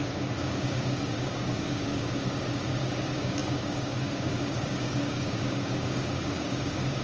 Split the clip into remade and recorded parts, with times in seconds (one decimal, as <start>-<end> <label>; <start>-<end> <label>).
0.0-7.0 remade